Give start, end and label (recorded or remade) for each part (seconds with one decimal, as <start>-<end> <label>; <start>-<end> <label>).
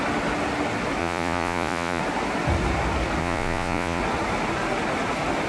0.0-1.0 recorded; 1.0-2.0 remade; 2.0-3.2 recorded; 3.2-4.0 remade; 4.0-5.5 recorded